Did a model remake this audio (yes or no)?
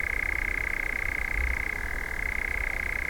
no